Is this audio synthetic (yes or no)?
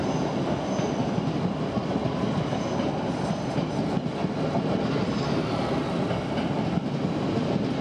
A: no